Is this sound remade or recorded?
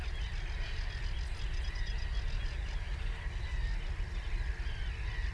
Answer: recorded